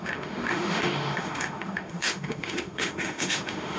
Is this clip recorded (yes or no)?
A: no